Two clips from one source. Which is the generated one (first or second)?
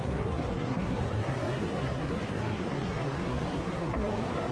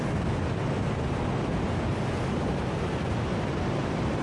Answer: first